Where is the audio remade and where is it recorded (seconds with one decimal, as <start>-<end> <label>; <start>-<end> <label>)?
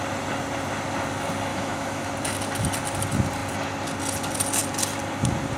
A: 0.0-1.5 recorded; 1.5-2.1 remade; 2.1-5.6 recorded